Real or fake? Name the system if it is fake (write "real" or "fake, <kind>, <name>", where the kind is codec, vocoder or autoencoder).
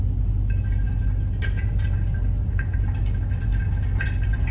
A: real